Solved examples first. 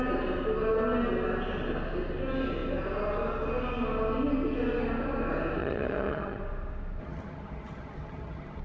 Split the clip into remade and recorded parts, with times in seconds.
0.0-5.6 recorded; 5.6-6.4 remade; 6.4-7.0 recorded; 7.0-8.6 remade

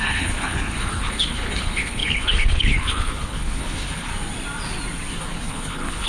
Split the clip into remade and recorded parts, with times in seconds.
0.0-4.1 remade; 4.1-5.2 recorded; 5.2-6.1 remade

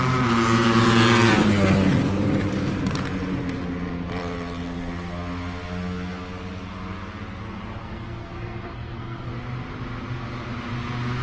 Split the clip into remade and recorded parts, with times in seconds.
0.0-7.8 recorded; 7.8-9.3 remade; 9.3-11.2 recorded